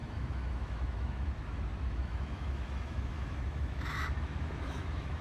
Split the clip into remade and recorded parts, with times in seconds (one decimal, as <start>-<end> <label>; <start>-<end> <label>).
0.0-5.2 remade